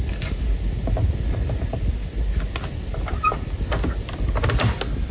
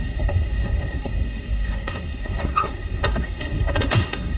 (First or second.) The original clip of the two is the first